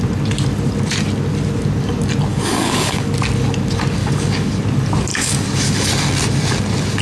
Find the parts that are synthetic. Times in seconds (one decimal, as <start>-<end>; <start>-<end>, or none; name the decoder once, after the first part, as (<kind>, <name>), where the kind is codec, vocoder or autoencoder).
2.3-3.1 (codec, DAC); 4.0-4.6; 5.1-5.9